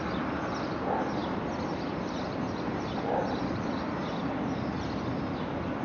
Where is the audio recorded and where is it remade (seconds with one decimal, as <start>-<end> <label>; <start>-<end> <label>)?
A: 0.0-1.2 recorded; 1.2-4.7 remade; 4.7-5.8 recorded